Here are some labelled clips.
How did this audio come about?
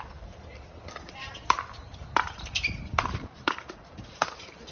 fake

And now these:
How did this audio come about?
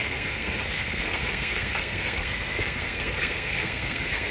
fake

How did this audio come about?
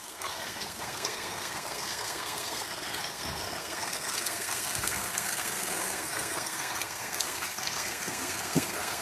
fake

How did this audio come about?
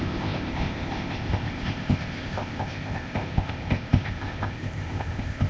fake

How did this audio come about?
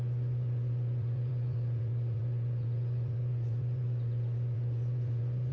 fake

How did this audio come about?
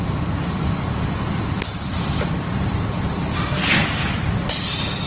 fake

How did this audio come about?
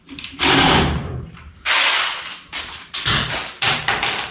fake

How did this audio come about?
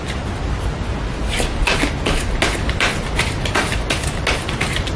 real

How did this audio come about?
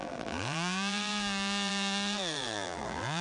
fake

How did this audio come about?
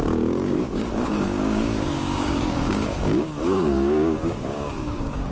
fake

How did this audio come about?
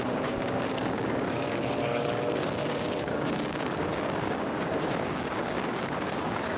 fake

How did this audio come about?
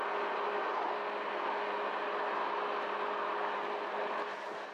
real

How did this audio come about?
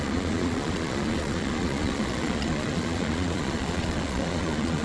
fake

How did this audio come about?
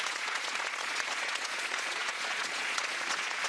fake